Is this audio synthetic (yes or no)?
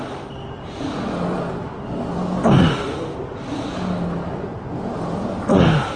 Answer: no